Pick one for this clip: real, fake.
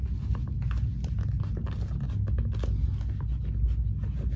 real